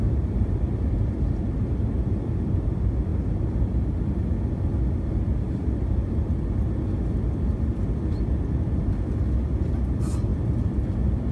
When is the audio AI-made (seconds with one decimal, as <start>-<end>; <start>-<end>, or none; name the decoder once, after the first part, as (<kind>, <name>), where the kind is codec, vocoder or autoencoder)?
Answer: none